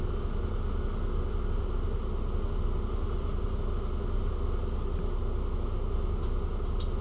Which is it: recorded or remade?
recorded